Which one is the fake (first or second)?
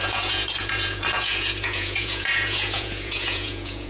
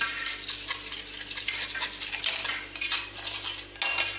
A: first